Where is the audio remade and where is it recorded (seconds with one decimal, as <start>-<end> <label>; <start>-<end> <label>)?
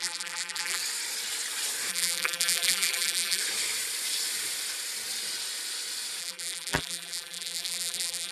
0.0-0.8 remade; 0.8-1.9 recorded; 1.9-3.4 remade; 3.4-6.2 recorded; 6.2-8.3 remade